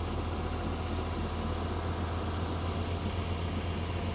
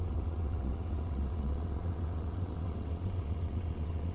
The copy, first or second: second